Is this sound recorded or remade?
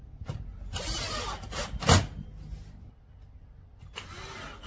recorded